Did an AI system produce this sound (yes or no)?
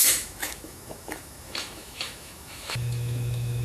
yes